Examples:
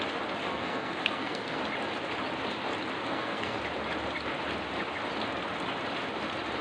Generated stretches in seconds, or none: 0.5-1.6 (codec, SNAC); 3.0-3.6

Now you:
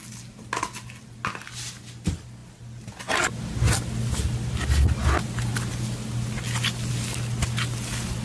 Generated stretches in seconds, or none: none

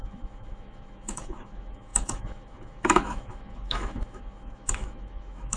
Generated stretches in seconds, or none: 0.0-5.6 (autoencoder, DAC-VAE)

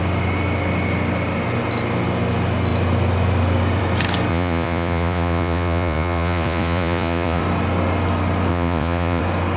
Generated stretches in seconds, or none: 4.3-7.4 (vocoder, Vocos); 8.5-9.2

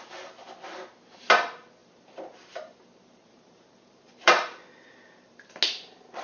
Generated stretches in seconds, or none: 1.8-5.5 (vocoder, BigVGAN v2)

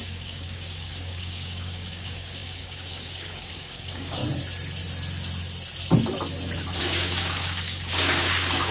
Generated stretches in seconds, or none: 0.0-4.2 (codec, DAC); 6.8-8.7

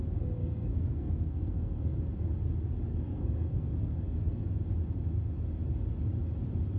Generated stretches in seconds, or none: 0.4-2.0 (codec, SNAC); 2.9-4.5